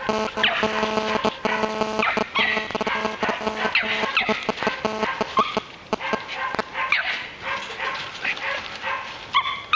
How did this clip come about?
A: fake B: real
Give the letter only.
B